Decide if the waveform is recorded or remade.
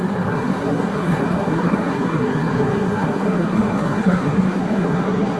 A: remade